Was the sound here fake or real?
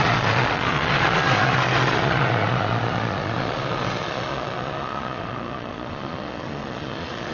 fake